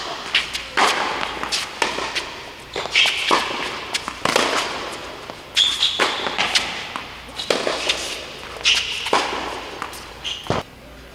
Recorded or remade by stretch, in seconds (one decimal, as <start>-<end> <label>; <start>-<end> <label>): 0.0-11.1 recorded